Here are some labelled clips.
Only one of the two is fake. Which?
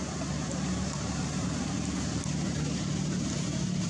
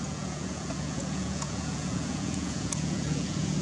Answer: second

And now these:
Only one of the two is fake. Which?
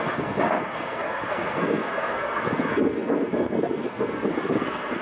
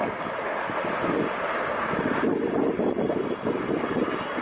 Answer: first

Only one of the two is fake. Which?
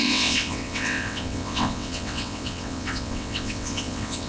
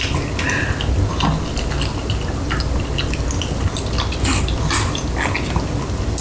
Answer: first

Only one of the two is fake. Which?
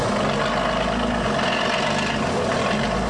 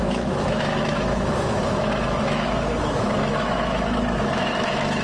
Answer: second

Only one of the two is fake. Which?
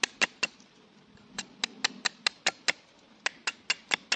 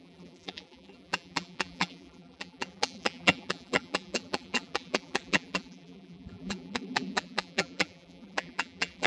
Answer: second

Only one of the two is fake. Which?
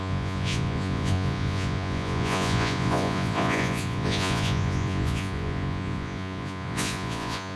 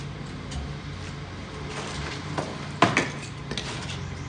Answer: first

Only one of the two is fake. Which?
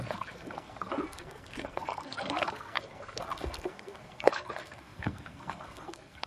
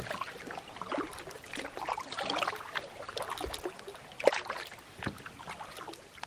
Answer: first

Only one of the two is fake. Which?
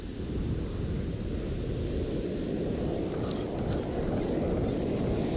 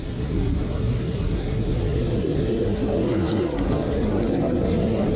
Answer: second